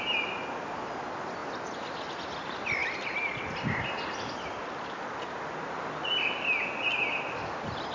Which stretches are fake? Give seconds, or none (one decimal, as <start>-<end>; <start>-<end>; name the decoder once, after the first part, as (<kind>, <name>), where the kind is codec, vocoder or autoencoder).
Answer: none